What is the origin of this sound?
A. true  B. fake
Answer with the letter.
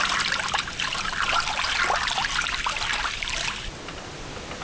B